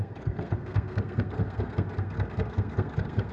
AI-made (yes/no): yes